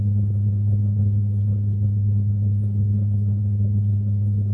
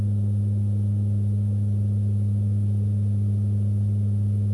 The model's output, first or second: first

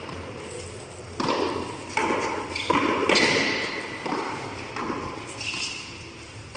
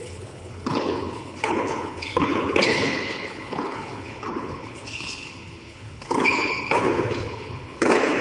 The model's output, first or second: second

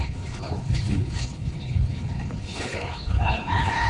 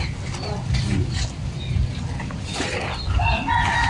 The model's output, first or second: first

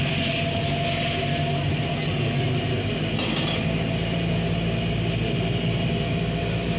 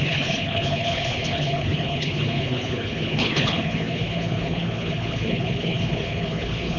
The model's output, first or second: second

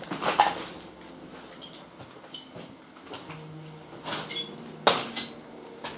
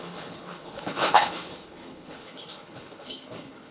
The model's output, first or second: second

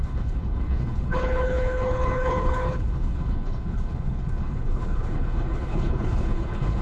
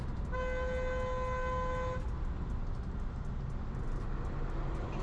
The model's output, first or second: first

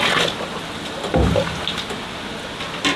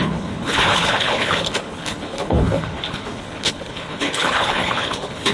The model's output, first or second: second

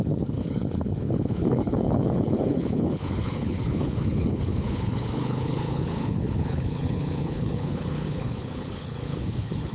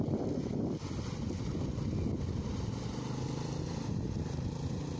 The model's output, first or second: first